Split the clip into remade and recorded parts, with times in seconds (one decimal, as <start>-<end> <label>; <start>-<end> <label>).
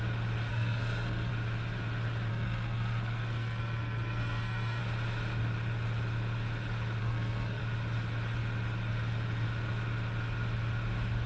0.0-0.5 recorded; 0.5-1.3 remade; 1.3-2.3 recorded; 2.3-4.8 remade; 4.8-7.0 recorded; 7.0-7.6 remade; 7.6-11.3 recorded